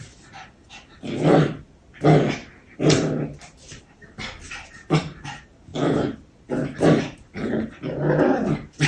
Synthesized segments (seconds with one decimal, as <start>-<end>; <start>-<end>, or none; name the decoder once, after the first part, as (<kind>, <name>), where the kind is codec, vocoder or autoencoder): 2.4-3.8 (vocoder, BigVGAN v2); 5.7-6.4